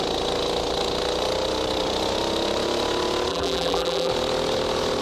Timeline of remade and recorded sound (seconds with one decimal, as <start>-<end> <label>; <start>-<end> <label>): 0.0-3.3 recorded; 3.3-4.1 remade; 4.1-5.0 recorded